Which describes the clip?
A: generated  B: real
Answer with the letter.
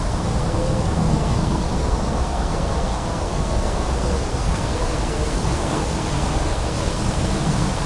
A